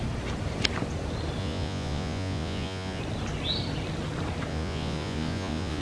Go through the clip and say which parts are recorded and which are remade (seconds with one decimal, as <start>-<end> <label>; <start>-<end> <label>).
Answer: 0.0-1.4 recorded; 1.4-3.0 remade; 3.0-4.5 recorded; 4.5-5.8 remade